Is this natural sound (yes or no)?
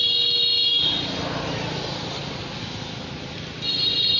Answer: yes